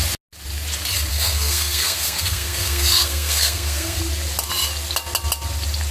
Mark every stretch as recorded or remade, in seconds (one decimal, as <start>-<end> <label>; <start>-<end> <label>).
0.0-1.1 recorded; 1.1-4.0 remade; 4.0-5.9 recorded